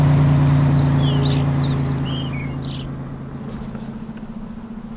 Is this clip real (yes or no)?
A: yes